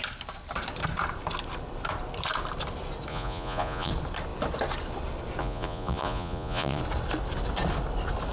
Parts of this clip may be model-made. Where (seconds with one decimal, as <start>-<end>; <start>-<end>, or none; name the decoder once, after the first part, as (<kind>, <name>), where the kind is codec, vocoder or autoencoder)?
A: 3.1-3.9 (vocoder, Vocos); 5.4-6.8